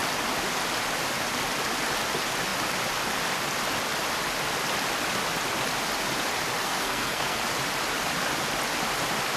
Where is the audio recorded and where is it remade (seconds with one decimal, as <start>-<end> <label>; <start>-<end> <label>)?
0.0-6.6 recorded; 6.6-7.4 remade; 7.4-9.4 recorded